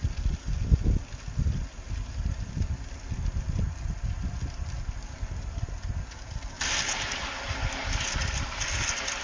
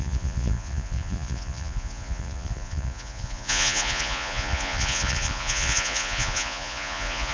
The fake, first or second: second